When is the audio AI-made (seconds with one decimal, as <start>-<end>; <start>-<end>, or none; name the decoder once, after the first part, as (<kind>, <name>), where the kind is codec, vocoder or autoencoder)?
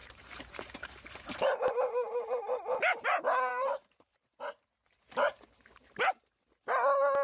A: 0.0-1.7 (vocoder, BigVGAN v2); 3.5-4.4